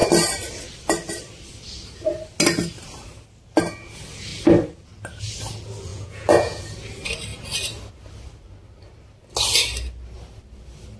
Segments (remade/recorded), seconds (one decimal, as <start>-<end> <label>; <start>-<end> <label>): 0.0-5.9 recorded; 5.9-6.6 remade; 6.6-11.0 recorded